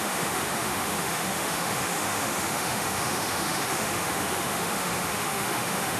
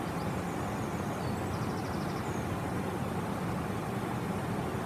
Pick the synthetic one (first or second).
first